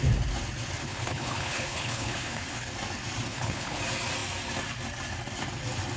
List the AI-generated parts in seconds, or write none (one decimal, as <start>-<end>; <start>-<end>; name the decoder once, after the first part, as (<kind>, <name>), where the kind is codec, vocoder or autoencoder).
0.8-2.7 (codec, HILCodec); 3.3-3.8